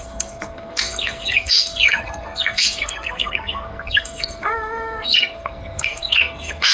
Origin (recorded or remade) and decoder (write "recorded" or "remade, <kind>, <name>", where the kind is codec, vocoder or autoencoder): remade, codec, SNAC